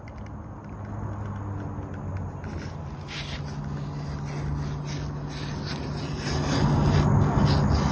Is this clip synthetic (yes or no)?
no